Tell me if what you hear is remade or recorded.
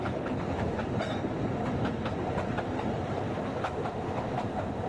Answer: remade